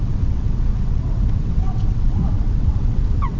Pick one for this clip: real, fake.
fake